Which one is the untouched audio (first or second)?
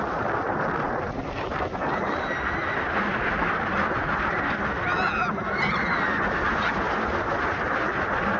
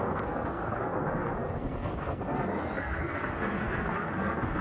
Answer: first